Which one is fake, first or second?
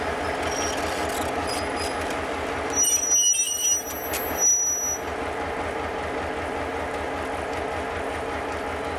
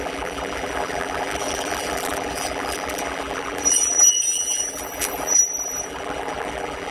second